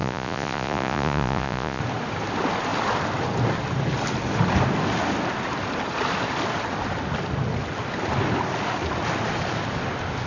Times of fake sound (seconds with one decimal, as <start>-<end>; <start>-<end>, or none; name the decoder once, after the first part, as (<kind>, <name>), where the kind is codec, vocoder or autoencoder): 0.0-1.8 (vocoder, Vocos)